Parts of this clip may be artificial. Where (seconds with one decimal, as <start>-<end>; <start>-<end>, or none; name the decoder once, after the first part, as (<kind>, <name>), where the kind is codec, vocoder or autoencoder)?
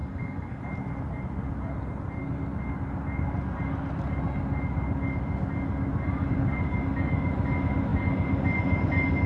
0.0-0.6 (codec, SNAC)